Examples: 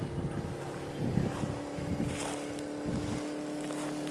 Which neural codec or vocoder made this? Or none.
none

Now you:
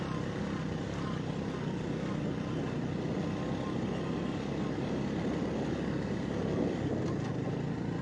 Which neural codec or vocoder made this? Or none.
none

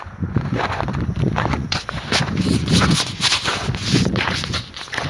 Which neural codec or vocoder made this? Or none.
vocoder, Vocos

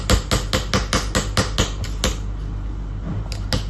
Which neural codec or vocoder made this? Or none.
none